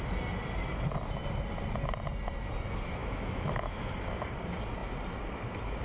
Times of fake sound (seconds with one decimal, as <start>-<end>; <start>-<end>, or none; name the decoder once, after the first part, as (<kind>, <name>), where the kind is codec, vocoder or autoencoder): 3.0-3.9 (autoencoder, DAC-VAE)